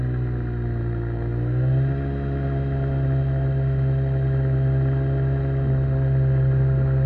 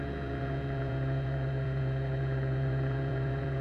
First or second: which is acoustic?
first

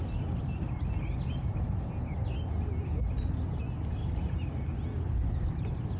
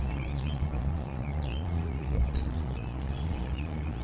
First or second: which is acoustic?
first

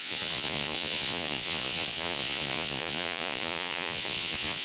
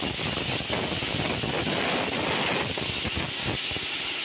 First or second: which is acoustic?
second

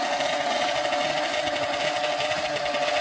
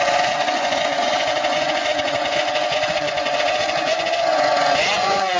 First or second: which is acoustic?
first